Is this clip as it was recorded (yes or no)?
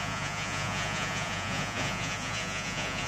no